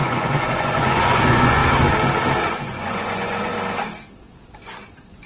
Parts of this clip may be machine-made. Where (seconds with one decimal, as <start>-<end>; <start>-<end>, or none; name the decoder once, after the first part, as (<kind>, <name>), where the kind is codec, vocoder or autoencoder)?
0.0-1.6 (vocoder, Vocos); 2.5-3.5; 4.2-5.3